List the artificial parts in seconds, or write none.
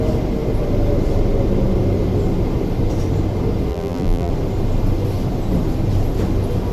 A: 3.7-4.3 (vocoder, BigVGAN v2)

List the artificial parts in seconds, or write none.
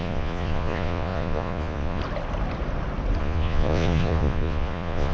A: 0.0-2.0 (vocoder, Vocos); 3.2-5.1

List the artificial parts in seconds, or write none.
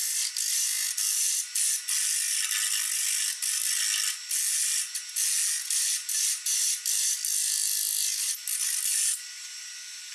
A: none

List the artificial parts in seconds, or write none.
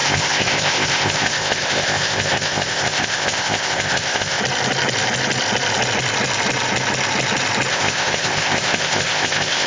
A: 0.0-4.4 (codec, ZipCodec); 7.7-9.7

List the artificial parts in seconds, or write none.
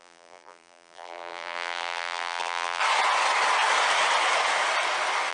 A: 0.0-2.8 (vocoder, BigVGAN v2)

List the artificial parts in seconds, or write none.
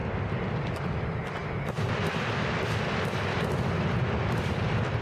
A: 0.6-1.4 (vocoder, BigVGAN v2); 4.4-5.0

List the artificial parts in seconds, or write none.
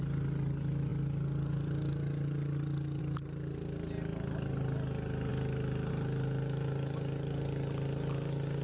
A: none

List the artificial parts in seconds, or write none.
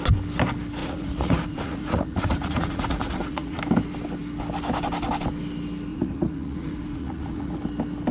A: 0.8-3.6 (vocoder, Vocos); 5.9-7.6